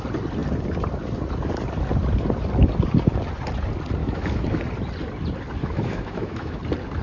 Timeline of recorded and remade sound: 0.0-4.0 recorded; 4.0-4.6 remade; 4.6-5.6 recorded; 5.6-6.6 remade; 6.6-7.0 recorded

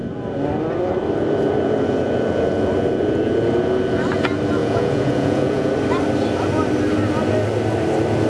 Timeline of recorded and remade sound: 0.0-4.6 recorded; 4.6-5.7 remade; 5.7-8.3 recorded

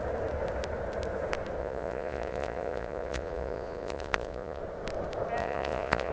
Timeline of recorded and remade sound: 0.0-1.6 recorded; 1.6-4.6 remade; 4.6-5.4 recorded; 5.4-6.1 remade

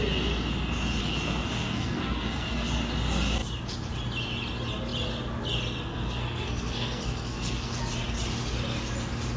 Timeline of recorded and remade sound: 0.0-1.0 recorded; 1.0-2.7 remade; 2.7-5.9 recorded; 5.9-7.8 remade; 7.8-9.4 recorded

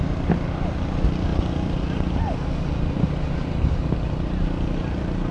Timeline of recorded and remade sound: 0.0-5.3 recorded

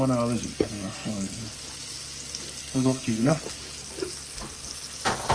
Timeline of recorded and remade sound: 0.0-0.5 recorded; 0.5-1.4 remade; 1.4-2.6 recorded; 2.6-3.4 remade; 3.4-5.3 recorded

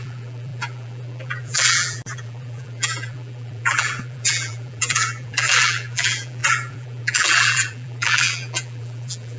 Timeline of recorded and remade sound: 0.0-9.4 remade